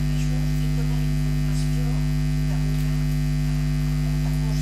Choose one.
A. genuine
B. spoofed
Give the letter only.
A